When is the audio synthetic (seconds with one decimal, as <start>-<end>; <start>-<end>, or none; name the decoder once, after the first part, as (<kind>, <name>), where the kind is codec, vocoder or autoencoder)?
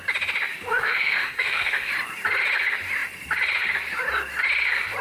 0.7-1.9 (autoencoder, DAC-VAE)